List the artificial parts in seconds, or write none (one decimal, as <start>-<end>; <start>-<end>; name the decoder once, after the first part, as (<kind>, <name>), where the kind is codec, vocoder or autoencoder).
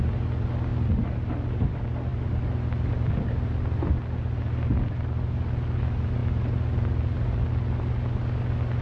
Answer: none